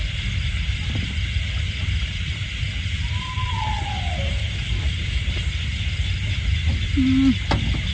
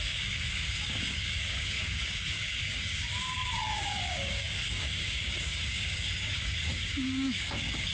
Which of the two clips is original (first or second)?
first